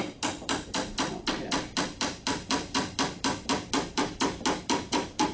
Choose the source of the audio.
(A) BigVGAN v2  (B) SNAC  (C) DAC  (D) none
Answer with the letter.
D